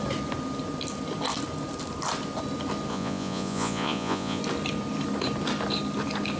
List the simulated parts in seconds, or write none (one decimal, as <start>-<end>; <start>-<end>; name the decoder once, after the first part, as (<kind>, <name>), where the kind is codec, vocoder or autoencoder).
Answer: 2.9-4.4 (vocoder, Vocos)